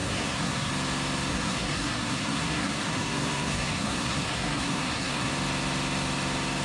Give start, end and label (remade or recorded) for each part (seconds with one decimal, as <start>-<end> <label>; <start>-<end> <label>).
0.0-0.7 remade; 0.7-1.3 recorded; 1.3-5.3 remade; 5.3-6.6 recorded